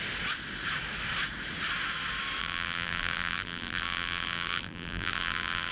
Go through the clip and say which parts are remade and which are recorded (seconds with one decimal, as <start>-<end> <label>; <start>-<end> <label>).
0.0-2.4 recorded; 2.4-5.7 remade